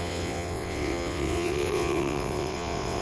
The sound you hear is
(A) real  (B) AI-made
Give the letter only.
B